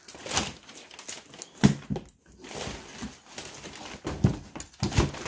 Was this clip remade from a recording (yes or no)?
no